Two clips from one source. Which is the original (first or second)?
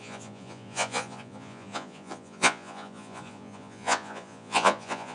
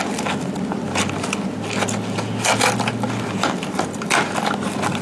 second